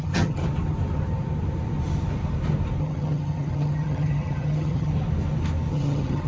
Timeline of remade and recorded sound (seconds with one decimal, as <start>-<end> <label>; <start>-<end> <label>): 0.0-0.4 remade; 0.4-2.8 recorded; 2.8-4.9 remade; 4.9-5.7 recorded; 5.7-6.3 remade